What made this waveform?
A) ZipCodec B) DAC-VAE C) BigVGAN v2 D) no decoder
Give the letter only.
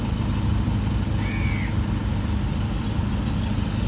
D